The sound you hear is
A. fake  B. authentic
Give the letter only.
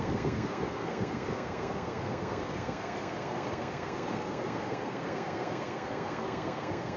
A